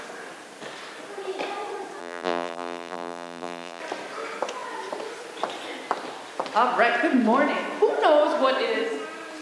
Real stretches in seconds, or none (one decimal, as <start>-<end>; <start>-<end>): 0.0-2.0; 3.8-9.4